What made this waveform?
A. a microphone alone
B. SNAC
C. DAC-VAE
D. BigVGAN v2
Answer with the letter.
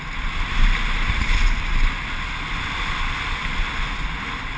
A